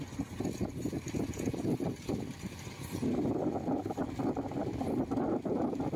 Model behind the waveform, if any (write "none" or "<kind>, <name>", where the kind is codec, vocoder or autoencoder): none